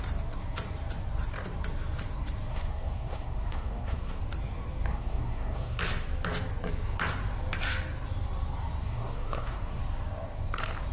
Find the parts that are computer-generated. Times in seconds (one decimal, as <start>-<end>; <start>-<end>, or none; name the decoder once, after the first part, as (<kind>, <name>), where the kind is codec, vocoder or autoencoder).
2.5-4.2 (codec, SNAC); 4.9-5.8; 8.8-9.8